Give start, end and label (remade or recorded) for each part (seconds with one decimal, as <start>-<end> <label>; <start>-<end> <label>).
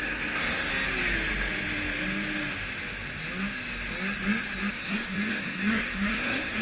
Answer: 0.0-0.7 remade; 0.7-4.7 recorded; 4.7-6.6 remade